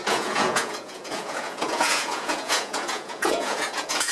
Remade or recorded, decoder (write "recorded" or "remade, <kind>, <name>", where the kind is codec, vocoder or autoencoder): remade, vocoder, Vocos